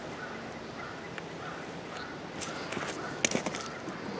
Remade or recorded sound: recorded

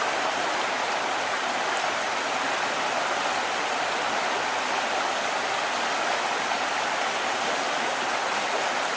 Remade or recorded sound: recorded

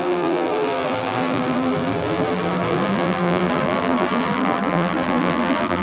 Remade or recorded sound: remade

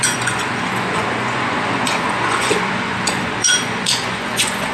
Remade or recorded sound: remade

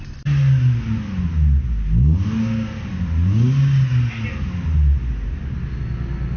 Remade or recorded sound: recorded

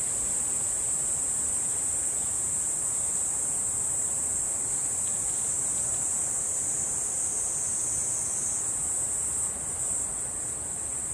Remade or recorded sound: recorded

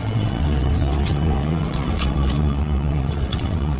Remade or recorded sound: remade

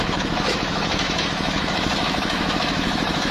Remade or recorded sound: remade